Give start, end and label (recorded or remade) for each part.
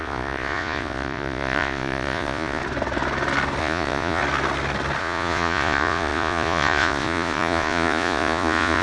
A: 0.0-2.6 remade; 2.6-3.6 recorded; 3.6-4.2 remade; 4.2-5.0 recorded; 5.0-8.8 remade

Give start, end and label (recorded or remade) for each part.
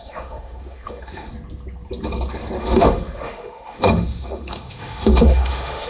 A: 0.0-1.3 remade; 1.3-2.6 recorded; 2.6-5.9 remade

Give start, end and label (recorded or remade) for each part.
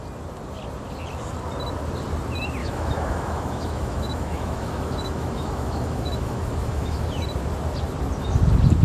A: 0.0-2.6 recorded; 2.6-7.1 remade; 7.1-8.8 recorded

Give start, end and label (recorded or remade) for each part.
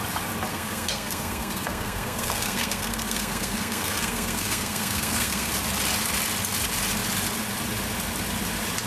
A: 0.0-0.5 recorded; 0.5-5.5 remade; 5.5-8.9 recorded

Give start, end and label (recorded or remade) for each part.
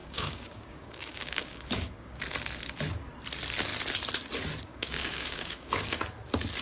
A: 0.0-2.2 remade; 2.2-4.7 recorded; 4.7-6.0 remade; 6.0-6.6 recorded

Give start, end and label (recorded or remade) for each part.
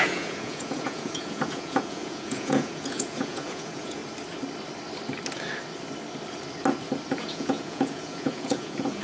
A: 0.0-4.0 remade; 4.0-7.1 recorded; 7.1-9.0 remade